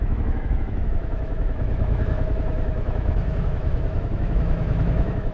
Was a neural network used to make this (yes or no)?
yes